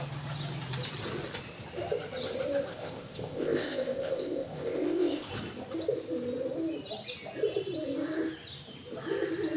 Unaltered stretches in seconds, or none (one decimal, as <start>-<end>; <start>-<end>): 0.0-2.7; 5.3-9.6

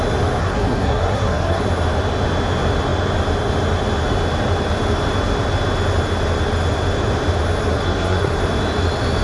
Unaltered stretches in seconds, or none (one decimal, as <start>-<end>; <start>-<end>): 0.0-0.4; 1.6-7.7; 8.4-9.2

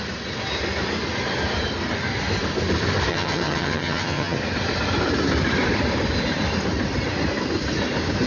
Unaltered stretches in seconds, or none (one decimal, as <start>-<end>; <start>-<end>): 0.0-3.1; 4.4-8.3

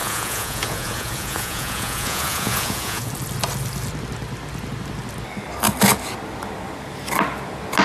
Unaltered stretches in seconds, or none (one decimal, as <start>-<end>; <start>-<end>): 3.1-7.8

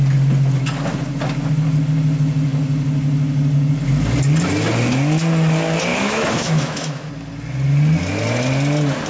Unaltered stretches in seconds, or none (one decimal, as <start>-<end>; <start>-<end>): 0.0-5.9; 7.1-9.1

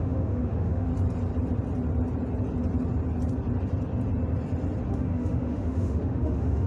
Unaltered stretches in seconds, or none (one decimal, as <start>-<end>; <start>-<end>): 0.9-4.9